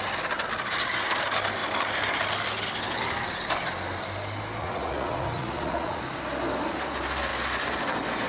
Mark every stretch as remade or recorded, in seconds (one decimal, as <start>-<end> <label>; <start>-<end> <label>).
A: 0.0-4.6 recorded; 4.6-6.0 remade; 6.0-8.3 recorded